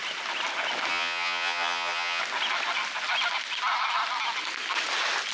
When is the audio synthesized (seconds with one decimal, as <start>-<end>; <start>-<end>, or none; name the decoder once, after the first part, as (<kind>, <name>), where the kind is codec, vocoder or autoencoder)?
0.9-2.2 (vocoder, HiFi-GAN)